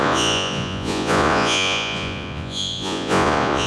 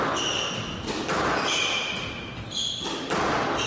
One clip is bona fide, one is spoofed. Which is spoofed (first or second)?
first